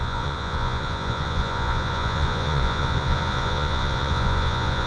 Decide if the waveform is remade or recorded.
remade